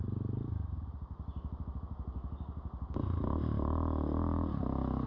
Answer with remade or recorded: recorded